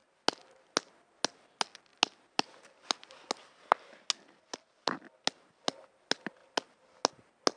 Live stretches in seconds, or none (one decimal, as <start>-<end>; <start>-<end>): 0.0-7.6